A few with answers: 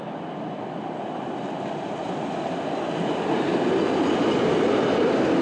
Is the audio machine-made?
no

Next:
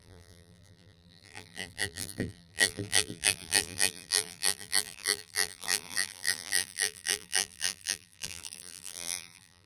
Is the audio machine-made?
yes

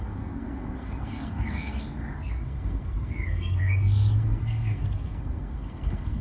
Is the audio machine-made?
yes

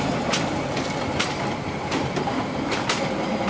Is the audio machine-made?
yes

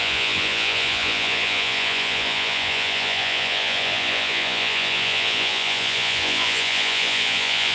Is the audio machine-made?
yes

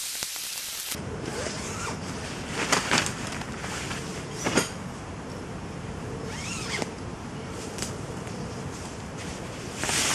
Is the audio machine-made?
yes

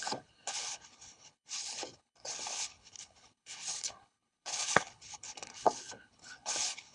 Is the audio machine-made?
yes